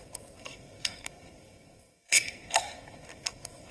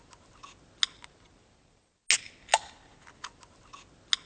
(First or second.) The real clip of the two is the second